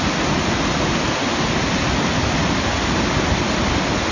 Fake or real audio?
real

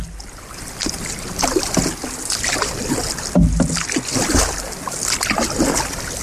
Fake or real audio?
real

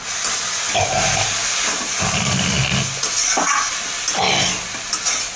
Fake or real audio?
real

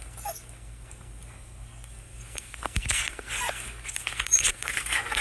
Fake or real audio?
fake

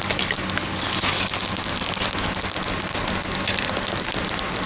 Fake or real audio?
real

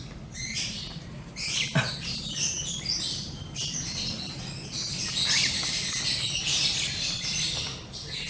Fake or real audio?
fake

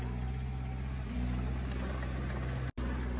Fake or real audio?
real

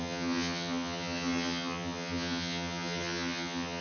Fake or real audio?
fake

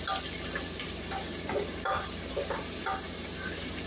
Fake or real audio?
real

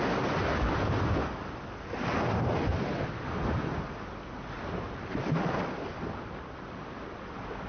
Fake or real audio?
real